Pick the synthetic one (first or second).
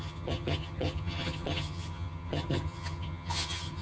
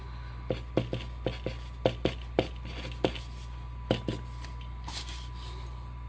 first